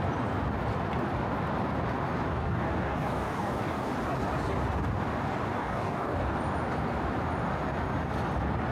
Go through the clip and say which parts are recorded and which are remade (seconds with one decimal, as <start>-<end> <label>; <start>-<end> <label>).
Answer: 0.0-2.3 recorded; 2.3-3.9 remade; 3.9-5.6 recorded; 5.6-6.4 remade; 6.4-8.7 recorded